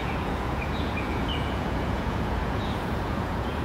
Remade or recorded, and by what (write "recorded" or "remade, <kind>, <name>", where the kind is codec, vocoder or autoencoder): remade, vocoder, Vocos